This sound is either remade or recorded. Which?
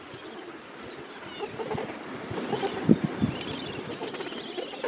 remade